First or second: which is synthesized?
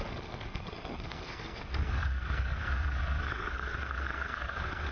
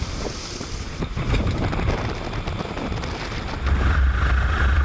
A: first